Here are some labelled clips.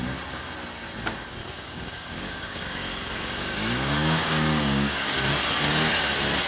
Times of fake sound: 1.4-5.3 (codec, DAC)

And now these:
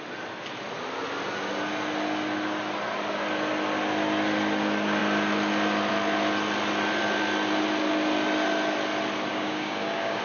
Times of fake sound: 9.3-10.2 (codec, DAC)

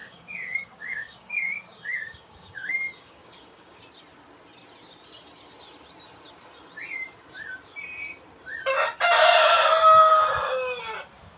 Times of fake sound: 0.0-3.8 (codec, DAC)

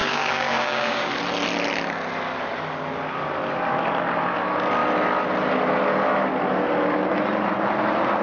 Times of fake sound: 0.0-1.1 (codec, DAC)

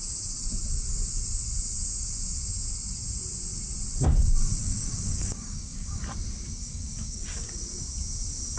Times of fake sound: 4.6-6.0 (codec, DAC); 6.6-7.5

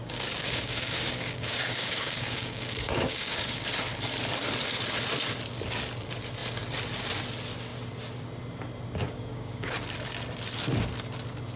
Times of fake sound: 0.0-3.6 (codec, DAC); 9.0-9.7

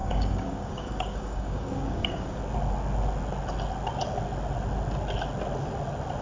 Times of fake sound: 0.0-2.4 (codec, DAC)